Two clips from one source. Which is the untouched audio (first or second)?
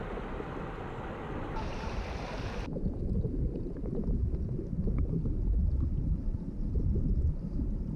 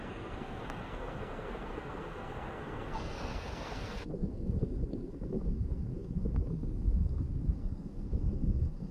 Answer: first